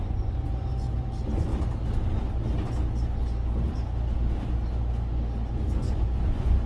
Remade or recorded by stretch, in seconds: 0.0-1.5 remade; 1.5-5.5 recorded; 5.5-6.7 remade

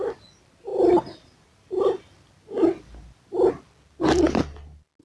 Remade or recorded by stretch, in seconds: 0.0-5.0 recorded

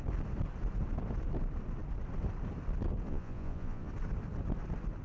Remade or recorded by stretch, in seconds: 0.0-3.1 recorded; 3.1-3.9 remade; 3.9-5.0 recorded

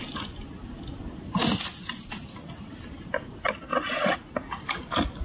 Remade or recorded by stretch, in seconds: 0.0-3.7 recorded; 3.7-4.3 remade; 4.3-5.2 recorded

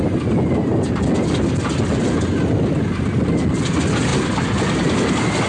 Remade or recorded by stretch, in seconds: 0.0-5.5 recorded

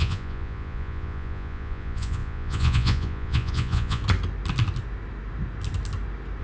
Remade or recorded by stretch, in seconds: 0.0-4.0 remade; 4.0-6.4 recorded

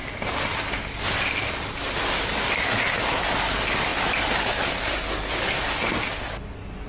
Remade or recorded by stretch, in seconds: 0.0-6.9 recorded

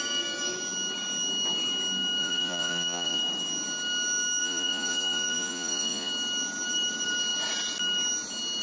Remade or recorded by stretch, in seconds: 0.0-2.2 recorded; 2.2-3.2 remade; 3.2-4.4 recorded; 4.4-6.1 remade; 6.1-8.6 recorded